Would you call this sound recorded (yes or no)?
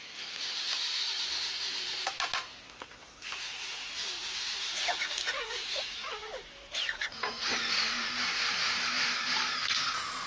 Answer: yes